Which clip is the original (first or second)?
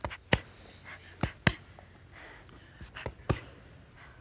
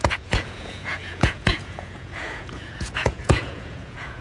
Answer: first